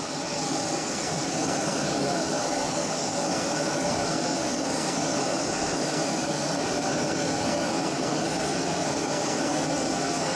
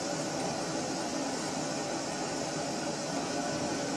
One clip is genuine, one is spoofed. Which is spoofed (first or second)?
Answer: first